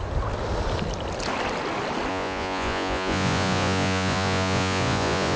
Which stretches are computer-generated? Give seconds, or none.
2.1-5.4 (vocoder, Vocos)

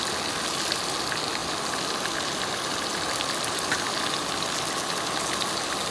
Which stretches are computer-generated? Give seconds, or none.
none

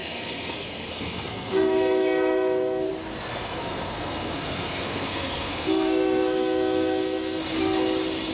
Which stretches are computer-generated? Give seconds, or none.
0.0-2.9 (codec, SNAC); 3.3-7.4

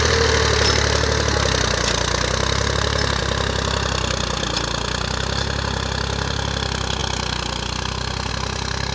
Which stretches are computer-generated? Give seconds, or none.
none

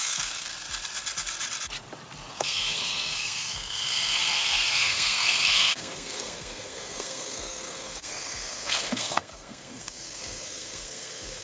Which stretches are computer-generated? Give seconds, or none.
0.0-0.5 (codec, SNAC); 2.3-11.4

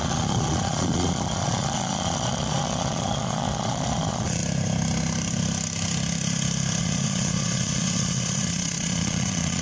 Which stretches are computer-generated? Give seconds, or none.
0.0-4.4 (vocoder, Vocos); 6.8-9.6

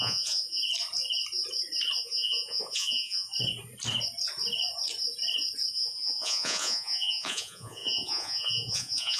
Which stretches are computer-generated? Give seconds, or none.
0.0-0.6 (vocoder, Vocos); 2.0-3.3; 5.7-9.2

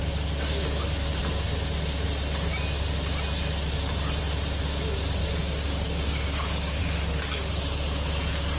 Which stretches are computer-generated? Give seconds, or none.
5.2-6.8 (codec, DAC)